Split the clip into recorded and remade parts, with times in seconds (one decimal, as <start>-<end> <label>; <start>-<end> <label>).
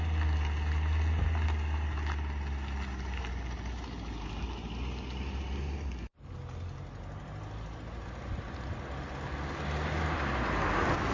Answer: 0.0-11.1 recorded